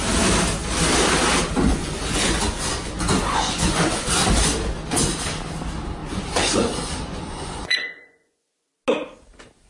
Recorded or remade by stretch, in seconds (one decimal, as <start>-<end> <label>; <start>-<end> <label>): 0.0-1.7 recorded; 1.7-4.1 remade; 4.1-6.0 recorded; 6.0-8.7 remade; 8.7-9.7 recorded